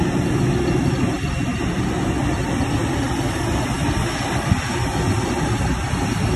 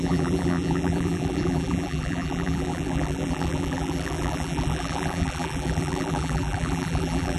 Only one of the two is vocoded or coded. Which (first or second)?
second